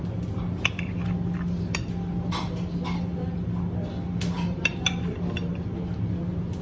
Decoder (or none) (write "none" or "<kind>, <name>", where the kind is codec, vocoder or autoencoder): none